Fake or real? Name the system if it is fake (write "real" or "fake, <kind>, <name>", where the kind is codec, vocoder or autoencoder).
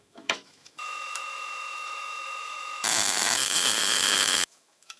fake, autoencoder, DAC-VAE